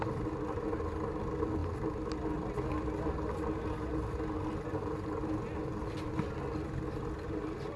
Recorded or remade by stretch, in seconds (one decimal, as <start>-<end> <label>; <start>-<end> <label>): 0.0-7.8 recorded